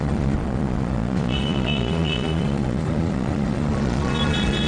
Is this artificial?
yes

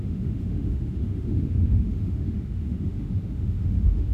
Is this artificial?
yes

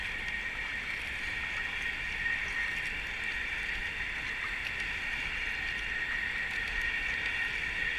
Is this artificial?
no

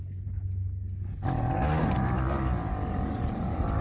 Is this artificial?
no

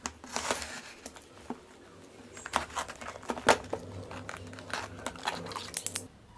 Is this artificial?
no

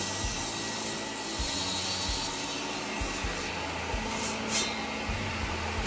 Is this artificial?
no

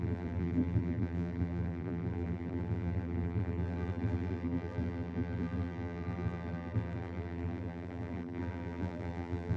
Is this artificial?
yes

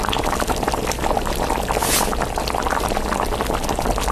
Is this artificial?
no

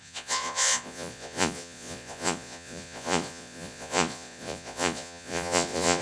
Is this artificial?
yes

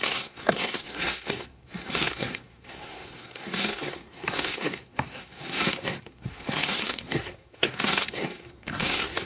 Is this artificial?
yes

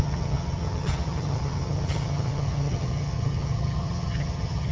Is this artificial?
yes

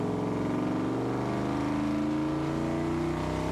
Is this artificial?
no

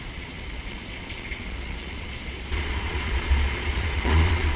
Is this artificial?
yes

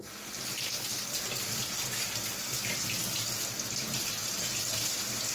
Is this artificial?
no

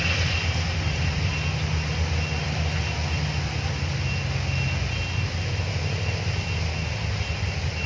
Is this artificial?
no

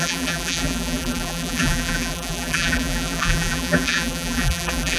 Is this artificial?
yes